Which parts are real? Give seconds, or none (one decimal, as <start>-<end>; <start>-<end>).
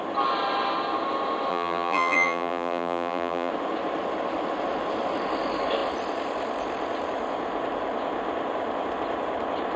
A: 0.0-1.5; 3.5-9.8